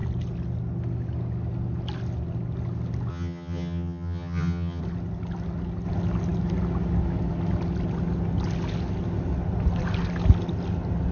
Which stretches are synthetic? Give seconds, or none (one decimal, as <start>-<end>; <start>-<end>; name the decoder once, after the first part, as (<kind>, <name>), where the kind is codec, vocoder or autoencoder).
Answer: 3.1-4.8 (vocoder, HiFi-GAN)